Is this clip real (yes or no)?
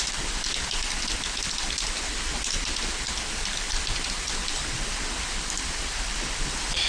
yes